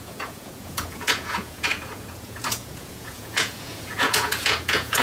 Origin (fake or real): fake